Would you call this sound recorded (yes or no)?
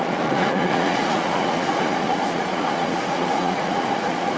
no